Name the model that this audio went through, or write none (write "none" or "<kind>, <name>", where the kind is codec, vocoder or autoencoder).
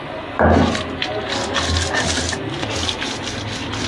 none